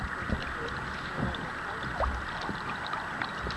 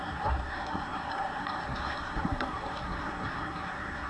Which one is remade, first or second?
second